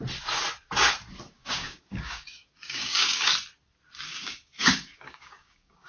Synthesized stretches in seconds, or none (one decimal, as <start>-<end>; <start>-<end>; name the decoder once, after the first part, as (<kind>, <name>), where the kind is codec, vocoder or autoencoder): 1.4-3.3 (codec, DAC); 4.1-5.9